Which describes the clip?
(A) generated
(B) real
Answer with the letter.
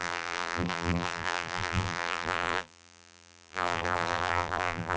A